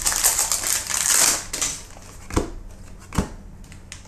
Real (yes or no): yes